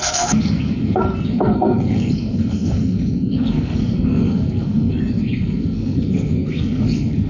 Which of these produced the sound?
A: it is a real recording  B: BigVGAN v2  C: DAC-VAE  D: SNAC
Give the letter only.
D